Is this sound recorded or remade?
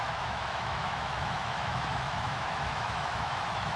remade